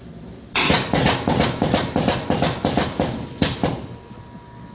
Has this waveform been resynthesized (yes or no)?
no